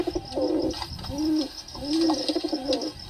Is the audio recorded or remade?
recorded